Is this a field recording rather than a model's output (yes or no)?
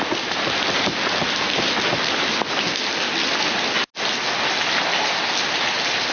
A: yes